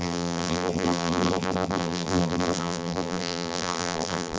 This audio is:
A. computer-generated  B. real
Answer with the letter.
A